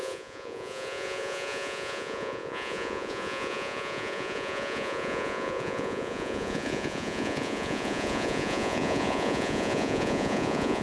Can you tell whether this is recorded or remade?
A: remade